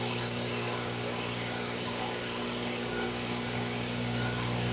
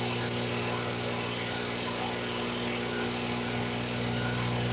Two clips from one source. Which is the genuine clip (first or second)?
second